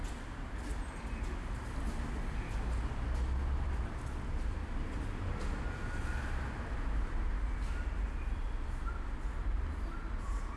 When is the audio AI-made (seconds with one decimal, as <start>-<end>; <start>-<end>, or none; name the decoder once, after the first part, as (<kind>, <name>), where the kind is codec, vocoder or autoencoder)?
none